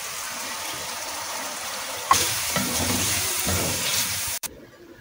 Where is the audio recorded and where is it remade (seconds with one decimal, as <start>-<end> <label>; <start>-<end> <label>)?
0.0-0.8 recorded; 0.8-3.3 remade; 3.3-3.9 recorded; 3.9-4.5 remade; 4.5-5.0 recorded